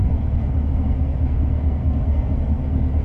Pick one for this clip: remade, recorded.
remade